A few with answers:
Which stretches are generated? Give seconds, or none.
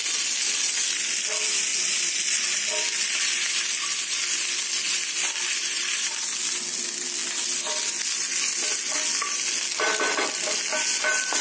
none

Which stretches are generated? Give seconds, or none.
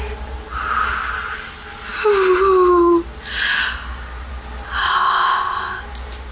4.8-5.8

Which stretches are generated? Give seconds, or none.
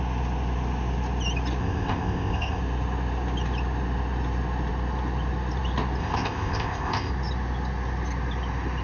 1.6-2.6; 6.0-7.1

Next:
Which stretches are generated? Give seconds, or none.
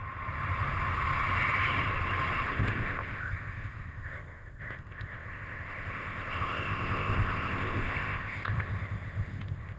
2.5-9.8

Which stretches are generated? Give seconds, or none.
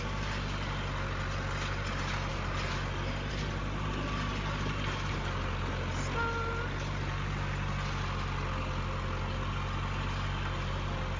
none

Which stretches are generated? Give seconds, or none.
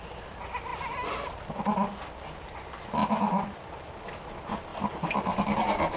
none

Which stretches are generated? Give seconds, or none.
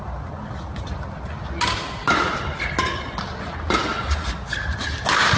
none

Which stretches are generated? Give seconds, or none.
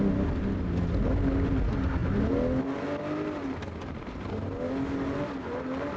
none